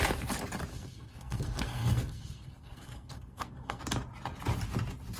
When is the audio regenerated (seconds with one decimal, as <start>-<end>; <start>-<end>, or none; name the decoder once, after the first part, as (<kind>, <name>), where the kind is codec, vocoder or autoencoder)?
0.7-3.8 (codec, SNAC)